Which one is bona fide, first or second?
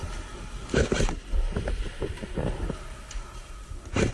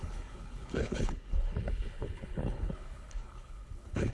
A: first